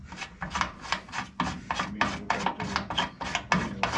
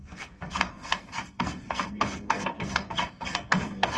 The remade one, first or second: second